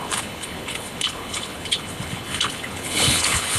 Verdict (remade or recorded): remade